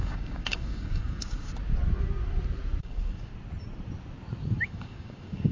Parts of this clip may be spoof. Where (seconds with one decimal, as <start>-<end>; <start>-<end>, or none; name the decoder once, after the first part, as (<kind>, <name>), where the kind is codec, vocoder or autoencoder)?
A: 0.0-1.5 (codec, DAC); 2.8-3.3; 4.6-5.5